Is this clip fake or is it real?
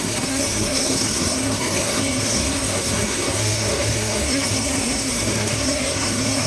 fake